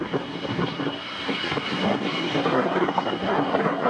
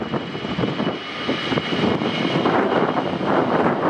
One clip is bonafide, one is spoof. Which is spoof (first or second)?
first